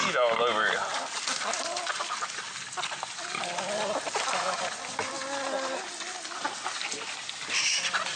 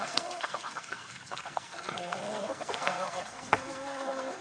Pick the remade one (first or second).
second